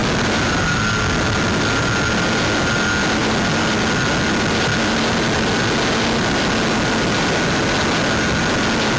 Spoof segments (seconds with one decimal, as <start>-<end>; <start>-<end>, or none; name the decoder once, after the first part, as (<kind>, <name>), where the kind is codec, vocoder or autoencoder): 0.0-0.7 (vocoder, BigVGAN v2)

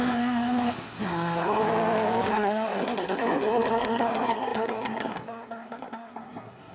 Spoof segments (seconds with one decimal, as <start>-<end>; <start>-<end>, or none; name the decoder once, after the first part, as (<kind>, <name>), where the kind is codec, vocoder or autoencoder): 0.0-1.6 (codec, SNAC); 2.3-6.7

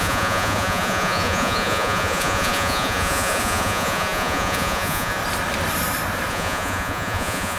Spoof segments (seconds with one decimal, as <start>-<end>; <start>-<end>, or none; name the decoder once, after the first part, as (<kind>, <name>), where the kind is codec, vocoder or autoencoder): 0.0-5.2 (vocoder, Vocos); 6.3-7.6

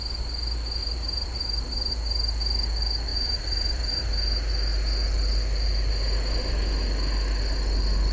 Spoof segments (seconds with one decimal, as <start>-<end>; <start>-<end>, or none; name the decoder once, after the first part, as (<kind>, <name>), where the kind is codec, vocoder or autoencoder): 0.8-1.9 (vocoder, BigVGAN v2); 3.1-4.0